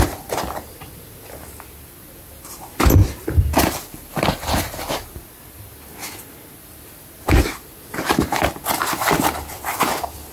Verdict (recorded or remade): recorded